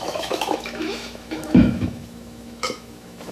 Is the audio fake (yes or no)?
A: yes